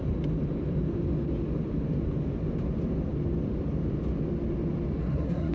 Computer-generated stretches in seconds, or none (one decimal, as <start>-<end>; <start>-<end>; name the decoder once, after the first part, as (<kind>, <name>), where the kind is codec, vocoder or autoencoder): 5.0-5.5 (codec, SNAC)